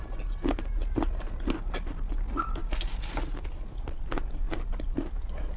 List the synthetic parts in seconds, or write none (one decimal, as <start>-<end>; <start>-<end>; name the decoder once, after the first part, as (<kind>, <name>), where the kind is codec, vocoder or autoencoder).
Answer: none